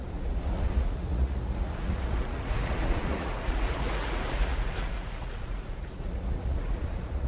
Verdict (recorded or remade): remade